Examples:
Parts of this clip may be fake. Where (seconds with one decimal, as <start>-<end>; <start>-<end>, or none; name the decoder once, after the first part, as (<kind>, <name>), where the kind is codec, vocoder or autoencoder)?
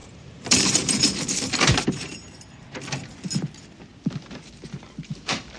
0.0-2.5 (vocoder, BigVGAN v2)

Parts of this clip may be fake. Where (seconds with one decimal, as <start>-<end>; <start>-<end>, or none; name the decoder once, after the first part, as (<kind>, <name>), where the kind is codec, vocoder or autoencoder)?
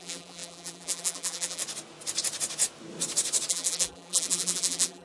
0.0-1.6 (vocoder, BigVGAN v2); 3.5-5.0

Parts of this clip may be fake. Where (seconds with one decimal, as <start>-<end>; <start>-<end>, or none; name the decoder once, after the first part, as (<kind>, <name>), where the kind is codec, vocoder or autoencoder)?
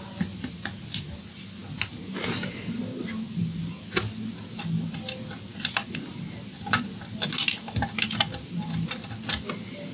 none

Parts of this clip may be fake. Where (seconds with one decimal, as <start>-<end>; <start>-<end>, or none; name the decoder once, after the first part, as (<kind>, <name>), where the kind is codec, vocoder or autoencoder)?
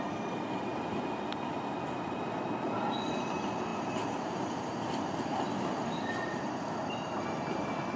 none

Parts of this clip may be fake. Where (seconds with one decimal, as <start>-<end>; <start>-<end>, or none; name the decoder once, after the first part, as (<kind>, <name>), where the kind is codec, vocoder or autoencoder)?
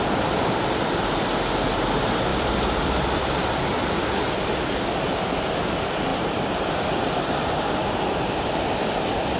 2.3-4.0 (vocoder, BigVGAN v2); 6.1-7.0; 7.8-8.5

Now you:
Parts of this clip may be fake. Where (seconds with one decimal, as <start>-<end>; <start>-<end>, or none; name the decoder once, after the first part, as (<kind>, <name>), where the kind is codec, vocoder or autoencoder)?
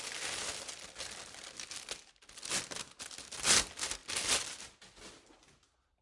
none